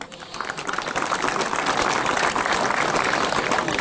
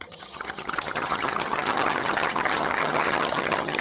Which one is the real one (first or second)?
first